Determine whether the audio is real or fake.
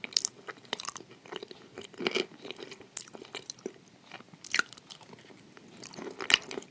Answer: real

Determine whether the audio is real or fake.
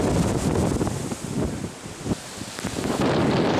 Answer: real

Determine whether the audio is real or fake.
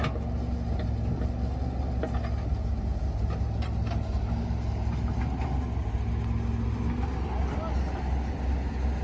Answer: real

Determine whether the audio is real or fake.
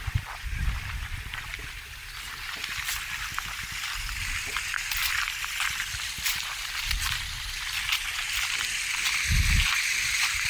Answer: real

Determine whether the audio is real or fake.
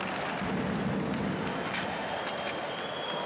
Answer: real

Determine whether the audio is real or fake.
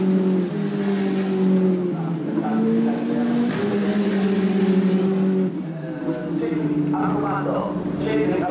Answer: real